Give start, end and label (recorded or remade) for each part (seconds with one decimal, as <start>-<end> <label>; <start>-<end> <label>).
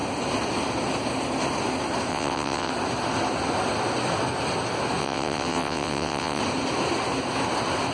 0.0-2.1 recorded; 2.1-2.7 remade; 2.7-5.0 recorded; 5.0-6.4 remade; 6.4-7.9 recorded